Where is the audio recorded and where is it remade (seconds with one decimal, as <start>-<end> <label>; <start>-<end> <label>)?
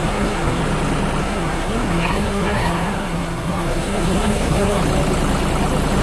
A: 0.0-0.6 remade; 0.6-1.2 recorded; 1.2-4.8 remade; 4.8-6.0 recorded